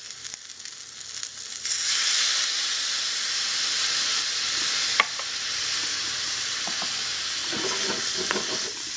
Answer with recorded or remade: recorded